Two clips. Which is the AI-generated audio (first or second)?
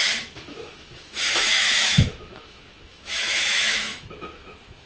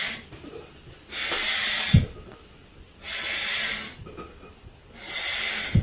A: first